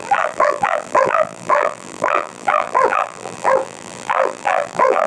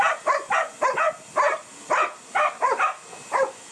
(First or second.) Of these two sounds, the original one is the second